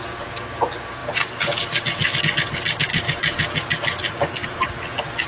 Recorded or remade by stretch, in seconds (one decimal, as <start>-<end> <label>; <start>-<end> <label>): 0.0-5.3 recorded